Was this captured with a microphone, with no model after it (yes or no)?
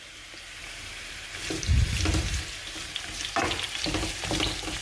yes